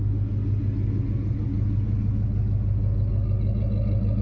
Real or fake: real